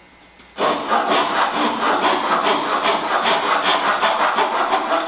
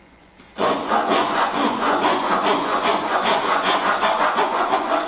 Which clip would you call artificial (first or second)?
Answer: second